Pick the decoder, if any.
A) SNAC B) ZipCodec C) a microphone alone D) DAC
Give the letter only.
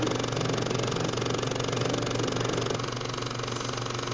C